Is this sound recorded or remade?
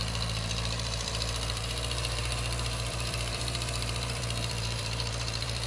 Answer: remade